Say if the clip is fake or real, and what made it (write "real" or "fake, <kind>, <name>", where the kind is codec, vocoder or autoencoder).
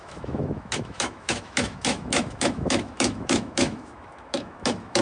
fake, autoencoder, DAC-VAE